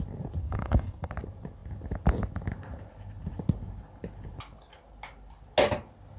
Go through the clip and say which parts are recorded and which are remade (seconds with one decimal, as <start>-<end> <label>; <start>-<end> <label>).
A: 0.0-0.4 recorded; 0.4-1.1 remade; 1.1-6.2 recorded